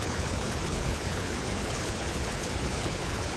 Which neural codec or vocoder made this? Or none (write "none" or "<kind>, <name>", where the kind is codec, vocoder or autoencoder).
codec, HILCodec